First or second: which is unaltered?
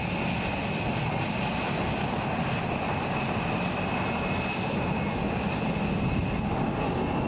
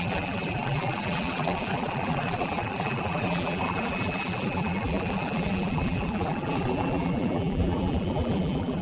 first